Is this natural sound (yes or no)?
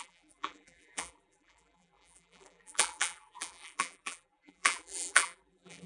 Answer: no